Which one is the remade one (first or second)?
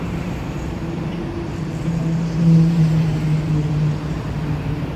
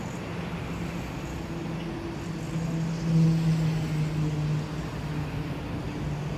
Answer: first